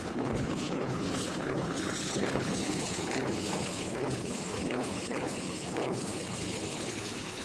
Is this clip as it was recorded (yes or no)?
no